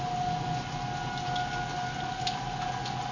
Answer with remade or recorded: recorded